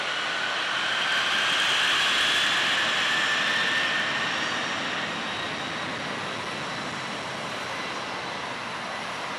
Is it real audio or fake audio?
real